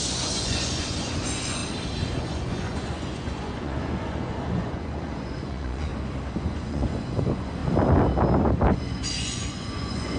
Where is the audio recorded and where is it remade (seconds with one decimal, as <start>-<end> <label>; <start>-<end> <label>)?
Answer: 0.0-1.6 remade; 1.6-2.2 recorded; 2.2-5.9 remade; 5.9-6.4 recorded; 6.4-7.6 remade; 7.6-8.7 recorded; 8.7-10.2 remade